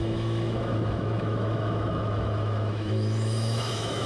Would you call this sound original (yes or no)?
no